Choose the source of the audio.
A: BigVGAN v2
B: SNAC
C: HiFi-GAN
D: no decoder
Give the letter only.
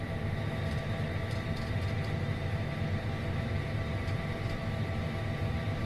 D